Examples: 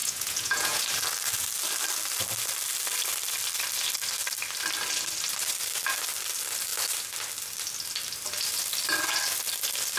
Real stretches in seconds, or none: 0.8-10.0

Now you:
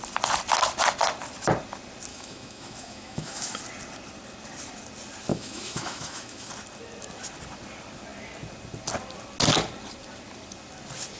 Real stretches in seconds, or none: 0.0-2.1; 3.6-5.3; 6.5-11.2